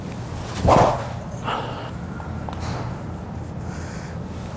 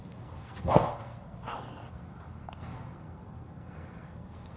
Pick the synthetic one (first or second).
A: second